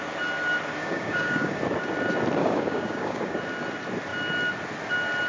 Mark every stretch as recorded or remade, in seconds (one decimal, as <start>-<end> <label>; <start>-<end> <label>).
0.0-0.8 recorded; 0.8-1.6 remade; 1.6-2.4 recorded; 2.4-3.4 remade; 3.4-5.3 recorded